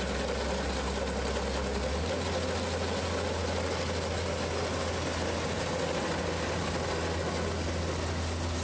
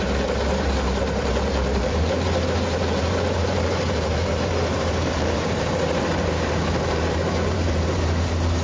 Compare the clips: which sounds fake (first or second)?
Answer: second